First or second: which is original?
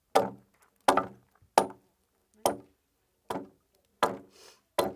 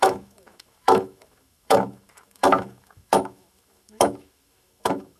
first